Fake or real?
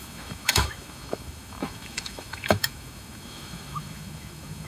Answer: fake